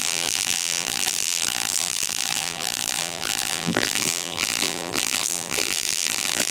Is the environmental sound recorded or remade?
remade